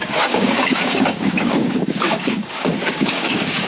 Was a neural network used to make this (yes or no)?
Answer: yes